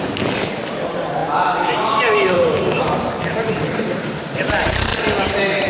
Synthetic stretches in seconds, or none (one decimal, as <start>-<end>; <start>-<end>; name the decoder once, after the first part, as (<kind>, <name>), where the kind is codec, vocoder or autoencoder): 0.0-4.9 (vocoder, BigVGAN v2)